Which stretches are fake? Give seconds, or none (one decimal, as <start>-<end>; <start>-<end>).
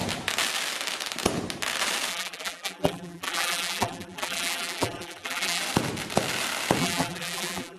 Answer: 2.1-5.6; 6.8-7.8